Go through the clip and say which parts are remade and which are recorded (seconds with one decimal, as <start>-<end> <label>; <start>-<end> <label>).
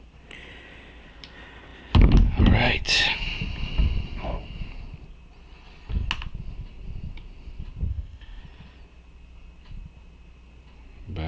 0.0-7.9 recorded; 7.9-8.4 remade; 8.4-11.3 recorded